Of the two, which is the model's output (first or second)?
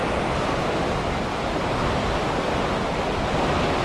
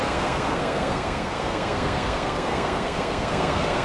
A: second